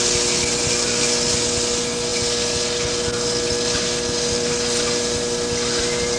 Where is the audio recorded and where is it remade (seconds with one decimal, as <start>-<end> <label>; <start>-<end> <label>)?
0.0-6.2 recorded